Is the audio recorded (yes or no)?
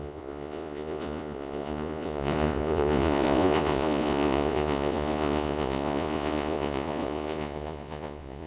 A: no